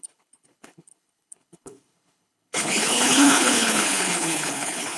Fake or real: fake